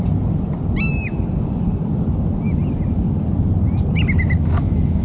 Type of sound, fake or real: real